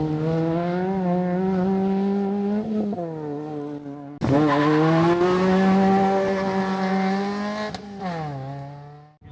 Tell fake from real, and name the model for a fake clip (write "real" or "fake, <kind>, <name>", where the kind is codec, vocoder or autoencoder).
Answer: real